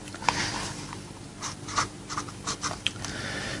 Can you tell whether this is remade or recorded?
remade